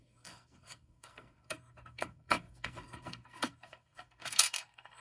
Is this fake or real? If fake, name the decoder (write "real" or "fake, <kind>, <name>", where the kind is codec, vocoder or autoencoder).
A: fake, codec, SNAC